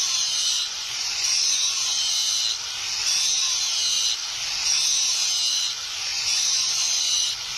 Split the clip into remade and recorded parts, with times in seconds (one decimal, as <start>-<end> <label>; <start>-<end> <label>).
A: 0.0-2.2 remade; 2.2-5.5 recorded; 5.5-7.6 remade

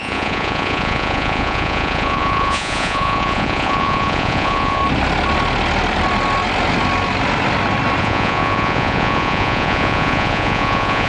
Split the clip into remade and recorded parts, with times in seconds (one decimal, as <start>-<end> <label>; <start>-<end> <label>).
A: 0.0-4.8 remade; 4.8-8.0 recorded; 8.0-11.1 remade

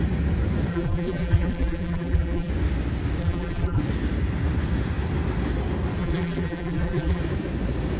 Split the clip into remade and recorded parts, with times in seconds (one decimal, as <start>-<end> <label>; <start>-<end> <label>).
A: 0.0-0.7 recorded; 0.7-2.5 remade; 2.5-3.2 recorded; 3.2-3.8 remade; 3.8-6.0 recorded; 6.0-7.2 remade; 7.2-8.0 recorded

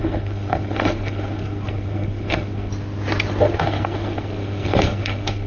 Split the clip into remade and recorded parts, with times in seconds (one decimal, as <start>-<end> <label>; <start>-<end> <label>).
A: 0.0-2.7 remade; 2.7-3.4 recorded; 3.4-5.5 remade

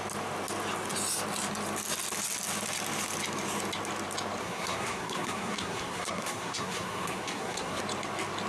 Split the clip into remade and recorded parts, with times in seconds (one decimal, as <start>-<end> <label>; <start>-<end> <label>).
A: 0.0-4.4 recorded; 4.4-7.8 remade; 7.8-8.5 recorded

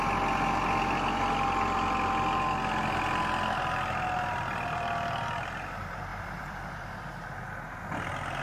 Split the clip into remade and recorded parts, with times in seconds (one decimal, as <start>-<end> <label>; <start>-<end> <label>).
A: 0.0-6.1 recorded; 6.1-7.1 remade; 7.1-8.4 recorded